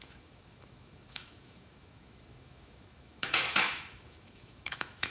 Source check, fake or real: fake